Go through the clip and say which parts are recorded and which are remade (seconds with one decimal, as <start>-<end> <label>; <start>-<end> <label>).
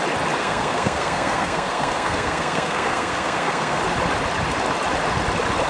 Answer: 0.0-0.4 recorded; 0.4-3.8 remade; 3.8-5.7 recorded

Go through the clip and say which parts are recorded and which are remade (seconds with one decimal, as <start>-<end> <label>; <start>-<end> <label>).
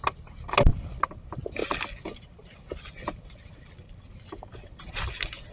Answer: 0.0-5.5 recorded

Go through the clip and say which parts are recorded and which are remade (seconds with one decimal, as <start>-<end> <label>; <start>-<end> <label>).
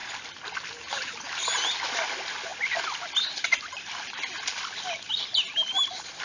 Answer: 0.0-6.2 recorded